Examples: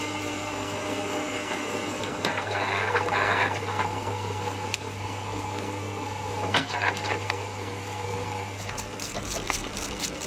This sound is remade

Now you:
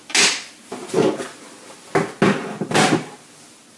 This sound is recorded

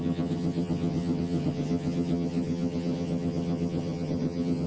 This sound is remade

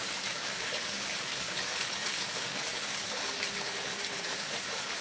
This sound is remade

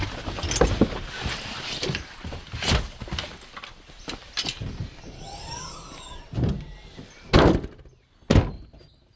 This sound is recorded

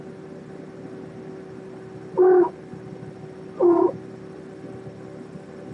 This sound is recorded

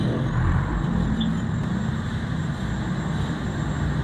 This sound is recorded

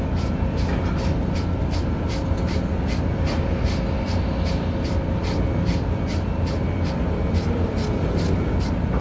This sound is recorded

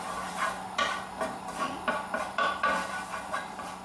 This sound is remade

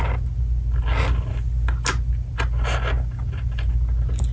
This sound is recorded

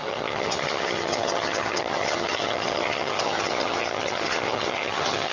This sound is remade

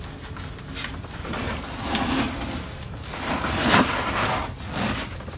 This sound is recorded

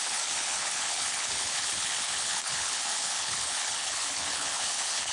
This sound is remade